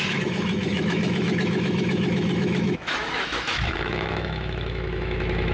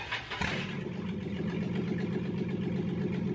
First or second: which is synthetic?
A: first